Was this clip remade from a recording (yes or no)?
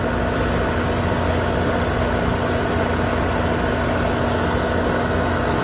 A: no